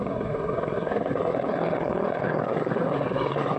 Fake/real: fake